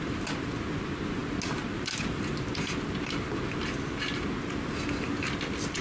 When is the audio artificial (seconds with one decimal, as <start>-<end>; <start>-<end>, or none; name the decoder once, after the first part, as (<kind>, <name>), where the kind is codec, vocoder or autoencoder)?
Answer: none